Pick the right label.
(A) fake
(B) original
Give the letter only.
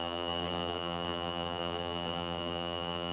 A